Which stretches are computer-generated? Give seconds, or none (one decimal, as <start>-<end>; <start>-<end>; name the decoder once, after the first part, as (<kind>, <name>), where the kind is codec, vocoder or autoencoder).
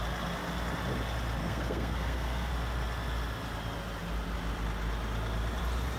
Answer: 1.4-2.5 (codec, SNAC)